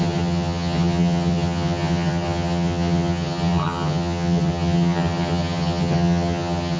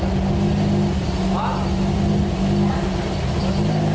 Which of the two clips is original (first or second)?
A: second